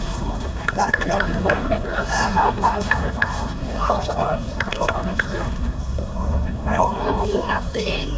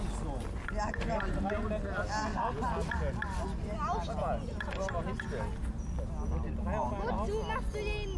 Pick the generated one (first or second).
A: first